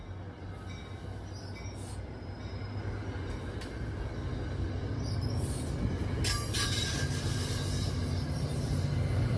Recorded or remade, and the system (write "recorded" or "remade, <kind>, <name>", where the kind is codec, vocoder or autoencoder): recorded